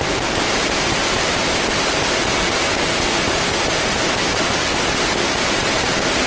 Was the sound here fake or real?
real